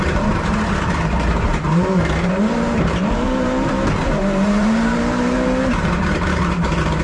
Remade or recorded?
remade